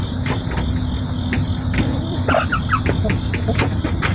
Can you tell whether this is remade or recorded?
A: remade